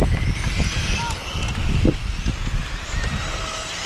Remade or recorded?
recorded